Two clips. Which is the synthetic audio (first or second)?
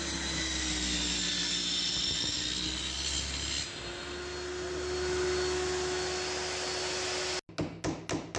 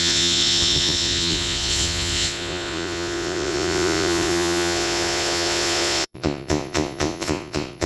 second